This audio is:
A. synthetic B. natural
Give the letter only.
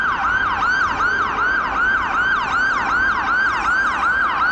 B